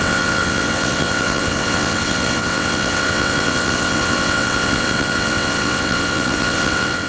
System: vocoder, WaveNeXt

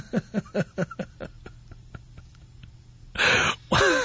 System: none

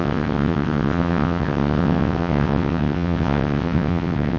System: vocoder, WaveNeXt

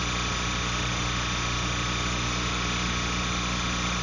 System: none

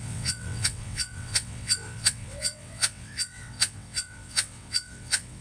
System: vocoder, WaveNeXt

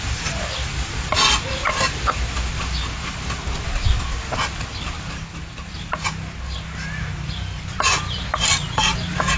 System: none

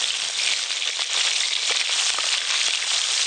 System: none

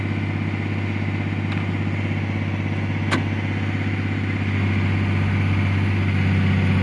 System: none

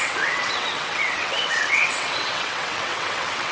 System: vocoder, WaveNeXt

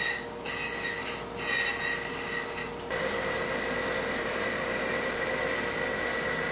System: none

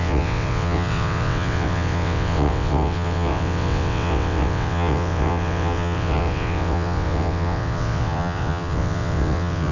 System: vocoder, WaveNeXt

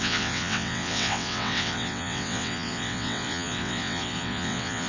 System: vocoder, WaveNeXt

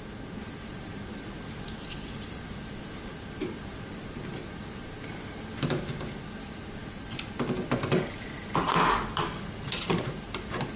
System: none